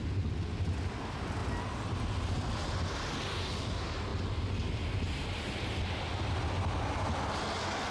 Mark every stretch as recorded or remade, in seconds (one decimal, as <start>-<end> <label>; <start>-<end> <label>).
0.0-7.9 recorded